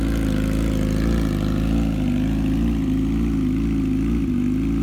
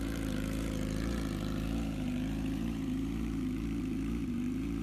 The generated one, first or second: second